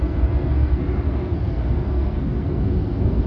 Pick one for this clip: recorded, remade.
remade